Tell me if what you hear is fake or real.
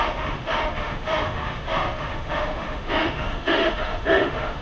fake